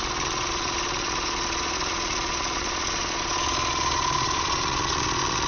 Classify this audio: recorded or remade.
remade